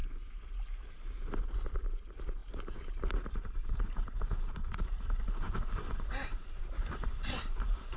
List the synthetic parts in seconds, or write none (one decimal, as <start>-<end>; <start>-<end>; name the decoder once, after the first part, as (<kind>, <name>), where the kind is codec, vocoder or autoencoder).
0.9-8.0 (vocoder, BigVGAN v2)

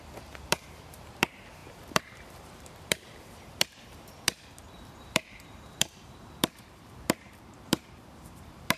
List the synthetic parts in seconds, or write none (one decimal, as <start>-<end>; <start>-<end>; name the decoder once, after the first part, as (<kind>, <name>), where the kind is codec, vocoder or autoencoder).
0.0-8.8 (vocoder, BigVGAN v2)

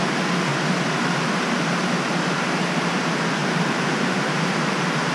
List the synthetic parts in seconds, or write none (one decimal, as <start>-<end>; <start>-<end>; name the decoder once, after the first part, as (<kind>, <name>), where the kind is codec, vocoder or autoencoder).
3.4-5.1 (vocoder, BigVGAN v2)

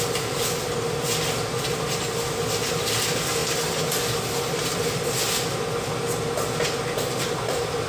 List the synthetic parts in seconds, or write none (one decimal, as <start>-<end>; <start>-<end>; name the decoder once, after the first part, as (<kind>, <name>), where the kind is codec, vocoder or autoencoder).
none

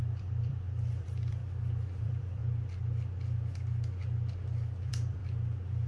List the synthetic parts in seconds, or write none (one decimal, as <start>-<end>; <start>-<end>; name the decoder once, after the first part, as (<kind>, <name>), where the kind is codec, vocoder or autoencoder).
0.0-1.4 (vocoder, BigVGAN v2); 2.0-2.4; 4.8-5.2

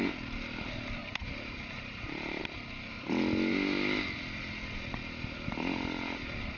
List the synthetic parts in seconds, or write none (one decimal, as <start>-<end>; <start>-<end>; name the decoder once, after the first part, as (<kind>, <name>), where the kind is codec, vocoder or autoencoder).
1.0-2.4 (vocoder, BigVGAN v2)